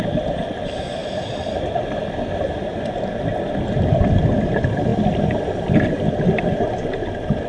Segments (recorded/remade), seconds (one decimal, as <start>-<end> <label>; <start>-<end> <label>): 0.0-7.5 remade